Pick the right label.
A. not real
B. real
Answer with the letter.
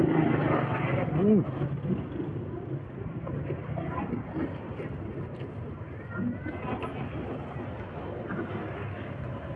B